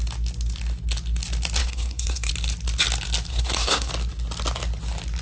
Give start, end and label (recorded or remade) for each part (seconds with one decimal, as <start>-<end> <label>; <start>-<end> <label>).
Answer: 0.0-1.6 recorded; 1.6-2.3 remade; 2.3-3.3 recorded; 3.3-3.9 remade; 3.9-5.2 recorded